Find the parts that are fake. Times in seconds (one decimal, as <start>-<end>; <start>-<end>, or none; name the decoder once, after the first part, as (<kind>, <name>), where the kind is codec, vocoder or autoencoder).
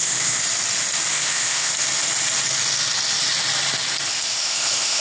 0.0-0.4 (codec, ZipCodec); 1.1-1.7; 4.1-5.0